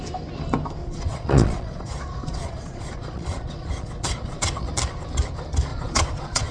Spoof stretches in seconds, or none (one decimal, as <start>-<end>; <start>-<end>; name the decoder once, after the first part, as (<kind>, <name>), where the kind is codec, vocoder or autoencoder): 0.8-4.7 (vocoder, Vocos); 5.7-6.5